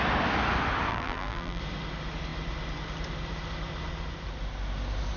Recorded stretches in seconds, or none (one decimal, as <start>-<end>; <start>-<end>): 0.0-0.9; 1.6-5.2